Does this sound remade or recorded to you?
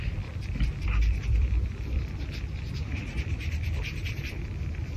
remade